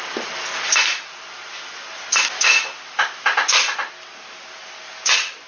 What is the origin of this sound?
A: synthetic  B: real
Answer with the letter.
B